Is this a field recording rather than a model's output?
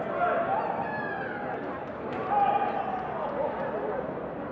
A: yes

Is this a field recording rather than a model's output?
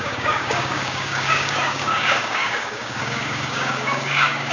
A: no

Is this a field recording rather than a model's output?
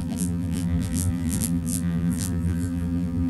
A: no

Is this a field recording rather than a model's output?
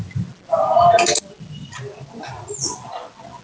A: yes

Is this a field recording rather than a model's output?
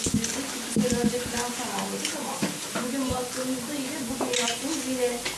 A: yes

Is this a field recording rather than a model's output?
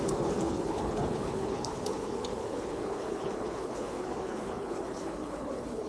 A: no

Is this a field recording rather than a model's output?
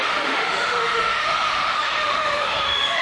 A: no